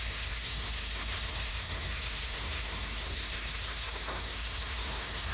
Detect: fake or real fake